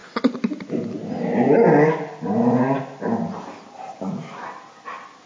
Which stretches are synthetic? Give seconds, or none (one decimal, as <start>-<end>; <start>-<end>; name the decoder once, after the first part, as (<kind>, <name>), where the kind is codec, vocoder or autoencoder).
none